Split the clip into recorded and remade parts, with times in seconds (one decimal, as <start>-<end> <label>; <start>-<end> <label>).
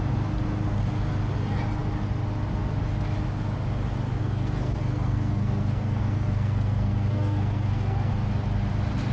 0.0-4.2 recorded; 4.2-8.1 remade; 8.1-9.1 recorded